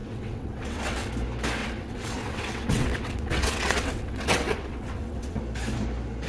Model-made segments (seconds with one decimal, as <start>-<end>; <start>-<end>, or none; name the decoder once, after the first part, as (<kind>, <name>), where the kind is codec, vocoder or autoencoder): 0.0-1.1 (vocoder, WaveNeXt); 1.6-5.4